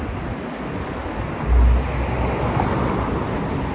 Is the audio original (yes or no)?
yes